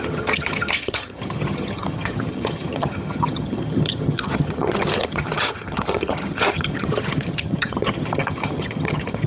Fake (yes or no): yes